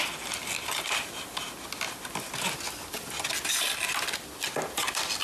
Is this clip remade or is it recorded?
recorded